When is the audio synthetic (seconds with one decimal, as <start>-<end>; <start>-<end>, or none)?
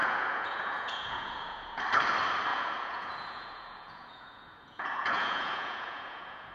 0.0-1.8; 2.5-6.5